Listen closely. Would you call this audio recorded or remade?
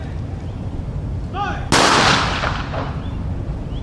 recorded